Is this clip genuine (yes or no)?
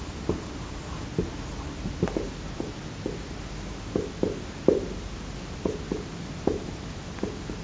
yes